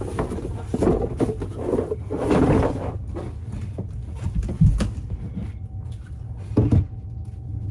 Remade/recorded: recorded